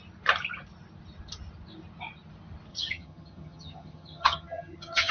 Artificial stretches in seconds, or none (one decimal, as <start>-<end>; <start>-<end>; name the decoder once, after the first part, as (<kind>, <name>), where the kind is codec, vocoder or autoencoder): 2.7-5.1 (vocoder, HiFi-GAN)